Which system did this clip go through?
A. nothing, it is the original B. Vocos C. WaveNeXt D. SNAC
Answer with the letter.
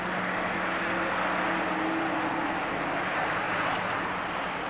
A